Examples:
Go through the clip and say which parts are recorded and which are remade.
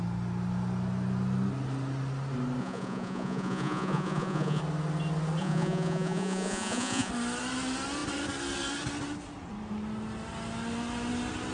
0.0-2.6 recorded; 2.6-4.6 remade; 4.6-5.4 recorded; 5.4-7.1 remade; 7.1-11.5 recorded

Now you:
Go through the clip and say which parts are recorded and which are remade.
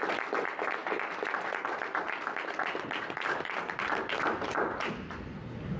0.0-5.8 recorded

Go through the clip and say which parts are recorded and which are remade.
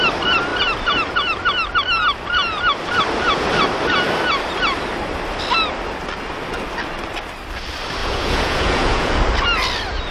0.0-8.0 recorded; 8.0-9.2 remade; 9.2-10.1 recorded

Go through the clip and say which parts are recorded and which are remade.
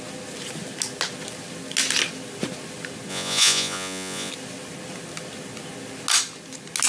0.0-3.1 recorded; 3.1-4.3 remade; 4.3-6.9 recorded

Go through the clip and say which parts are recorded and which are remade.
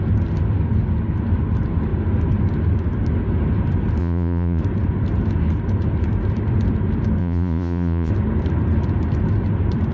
0.0-4.0 recorded; 4.0-4.6 remade; 4.6-7.2 recorded; 7.2-8.1 remade; 8.1-9.9 recorded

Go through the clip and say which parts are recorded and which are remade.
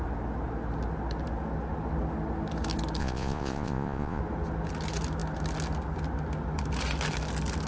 0.0-3.0 recorded; 3.0-4.2 remade; 4.2-7.7 recorded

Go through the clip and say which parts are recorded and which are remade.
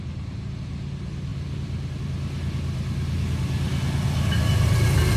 0.0-5.2 recorded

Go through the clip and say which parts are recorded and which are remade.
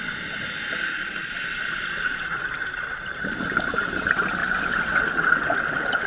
0.0-6.1 recorded